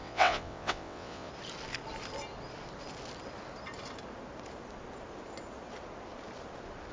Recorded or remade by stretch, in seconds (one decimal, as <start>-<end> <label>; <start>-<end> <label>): 0.0-1.3 remade; 1.3-6.9 recorded